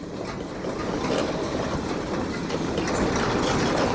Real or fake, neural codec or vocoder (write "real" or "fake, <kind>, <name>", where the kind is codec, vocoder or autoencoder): real